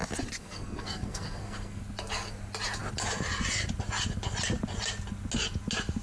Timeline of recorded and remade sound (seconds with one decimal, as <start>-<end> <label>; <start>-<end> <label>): 0.0-0.4 recorded; 0.4-1.8 remade; 1.8-6.0 recorded